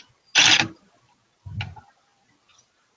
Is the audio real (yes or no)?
yes